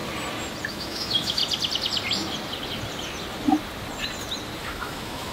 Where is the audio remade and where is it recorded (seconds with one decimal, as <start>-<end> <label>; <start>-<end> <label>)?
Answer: 0.0-0.7 recorded; 0.7-1.4 remade; 1.4-4.6 recorded; 4.6-5.3 remade